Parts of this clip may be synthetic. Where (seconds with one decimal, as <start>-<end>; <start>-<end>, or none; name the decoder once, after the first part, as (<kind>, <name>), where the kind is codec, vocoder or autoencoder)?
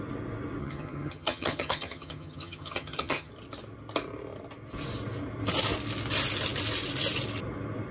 0.6-3.3 (vocoder, HiFi-GAN)